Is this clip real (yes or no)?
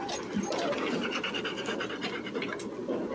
yes